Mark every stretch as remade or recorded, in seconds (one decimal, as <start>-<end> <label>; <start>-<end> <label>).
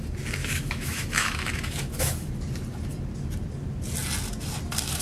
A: 0.0-0.4 recorded; 0.4-2.3 remade; 2.3-5.0 recorded